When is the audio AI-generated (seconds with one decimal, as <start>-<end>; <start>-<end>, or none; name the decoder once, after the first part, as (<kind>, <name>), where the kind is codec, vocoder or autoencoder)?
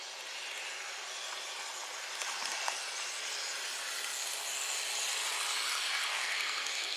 6.1-7.0 (codec, SNAC)